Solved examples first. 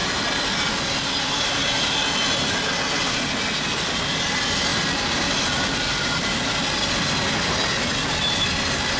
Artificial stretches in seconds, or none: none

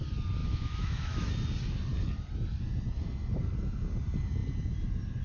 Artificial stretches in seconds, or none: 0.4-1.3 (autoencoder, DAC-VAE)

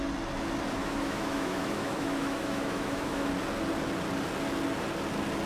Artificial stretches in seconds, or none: 0.8-3.3 (autoencoder, DAC-VAE)